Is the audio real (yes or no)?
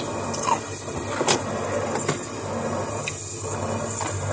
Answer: yes